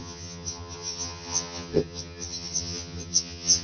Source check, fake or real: fake